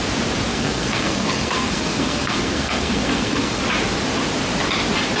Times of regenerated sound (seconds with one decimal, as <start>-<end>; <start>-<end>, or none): 0.5-3.6